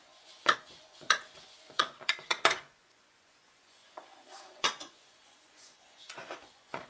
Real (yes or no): no